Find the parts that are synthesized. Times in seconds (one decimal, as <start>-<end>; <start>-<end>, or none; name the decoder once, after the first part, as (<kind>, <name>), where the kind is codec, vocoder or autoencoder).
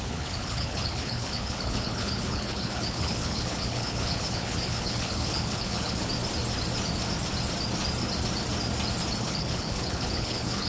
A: 0.0-6.1 (codec, HILCodec); 9.2-10.7